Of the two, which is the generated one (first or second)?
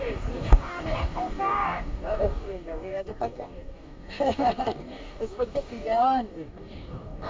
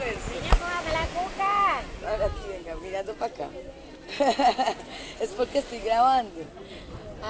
first